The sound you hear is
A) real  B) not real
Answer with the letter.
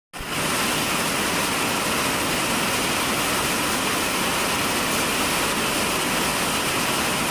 A